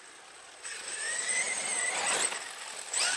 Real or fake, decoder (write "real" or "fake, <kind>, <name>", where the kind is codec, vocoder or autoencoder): real